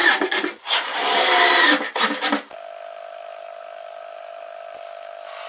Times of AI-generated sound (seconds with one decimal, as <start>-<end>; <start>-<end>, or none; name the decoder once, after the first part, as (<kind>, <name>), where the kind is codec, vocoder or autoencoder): none